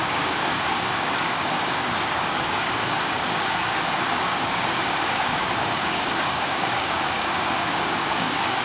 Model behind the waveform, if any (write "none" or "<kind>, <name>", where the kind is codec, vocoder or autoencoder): codec, DAC